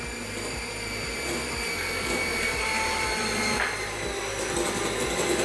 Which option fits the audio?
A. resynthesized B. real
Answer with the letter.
B